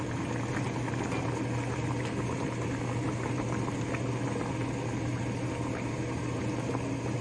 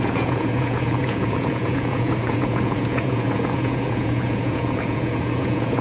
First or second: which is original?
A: first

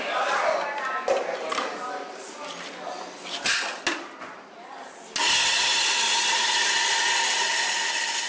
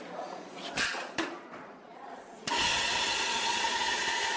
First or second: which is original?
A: first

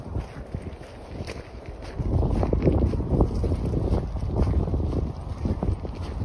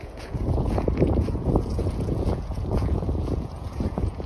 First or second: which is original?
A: first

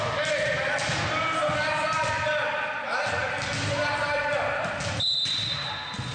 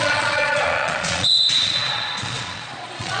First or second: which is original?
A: first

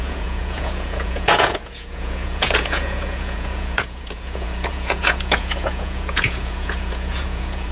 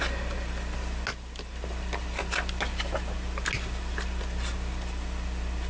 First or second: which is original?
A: second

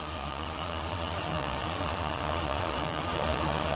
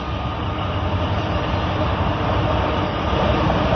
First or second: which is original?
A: second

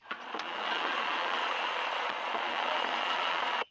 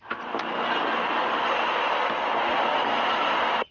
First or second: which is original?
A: second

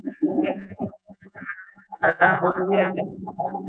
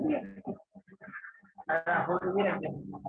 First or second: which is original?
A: second